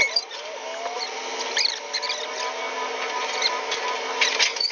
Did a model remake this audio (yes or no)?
no